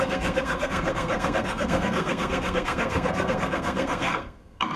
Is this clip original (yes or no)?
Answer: no